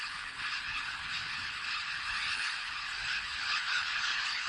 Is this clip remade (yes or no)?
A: yes